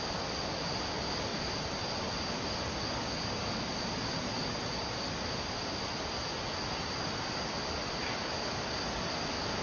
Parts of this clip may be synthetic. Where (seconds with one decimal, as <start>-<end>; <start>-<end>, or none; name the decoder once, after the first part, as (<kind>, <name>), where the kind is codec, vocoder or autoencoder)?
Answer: 6.2-8.1 (vocoder, BigVGAN v2)